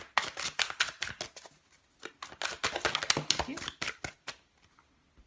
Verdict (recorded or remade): recorded